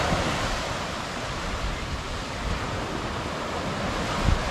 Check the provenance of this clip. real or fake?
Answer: real